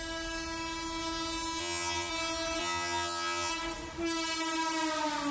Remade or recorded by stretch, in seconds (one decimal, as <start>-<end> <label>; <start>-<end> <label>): 0.0-1.6 recorded; 1.6-2.1 remade; 2.1-2.6 recorded; 2.6-3.5 remade; 3.5-5.3 recorded